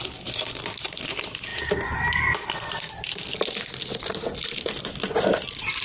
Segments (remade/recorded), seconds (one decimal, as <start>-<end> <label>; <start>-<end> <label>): 0.0-5.8 remade